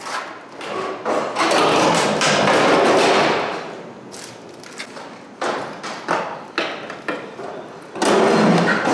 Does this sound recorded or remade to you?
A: recorded